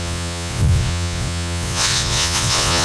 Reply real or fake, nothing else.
fake